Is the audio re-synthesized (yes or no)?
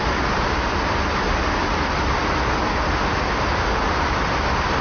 no